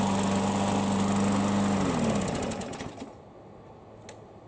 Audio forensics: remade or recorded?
recorded